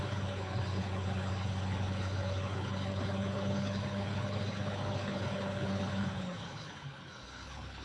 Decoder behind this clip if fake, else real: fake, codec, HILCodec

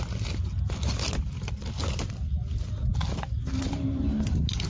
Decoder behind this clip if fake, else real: real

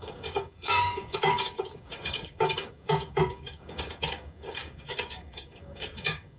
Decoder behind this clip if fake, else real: fake, codec, DAC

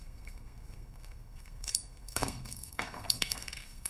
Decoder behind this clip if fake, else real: fake, codec, SNAC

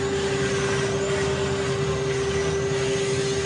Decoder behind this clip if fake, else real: real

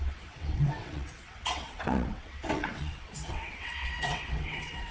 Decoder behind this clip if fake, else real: fake, vocoder, WaveNeXt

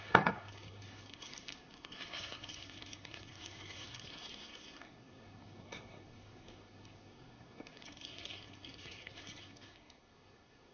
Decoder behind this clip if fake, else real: fake, codec, SNAC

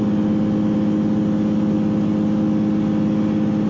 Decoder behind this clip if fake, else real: real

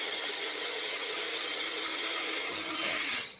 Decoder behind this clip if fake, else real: fake, vocoder, HiFi-GAN